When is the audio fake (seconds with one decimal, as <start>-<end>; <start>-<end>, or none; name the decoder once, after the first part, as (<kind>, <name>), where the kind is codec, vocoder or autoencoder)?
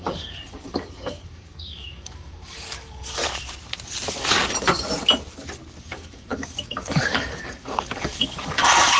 0.0-3.2 (codec, DAC); 5.8-9.0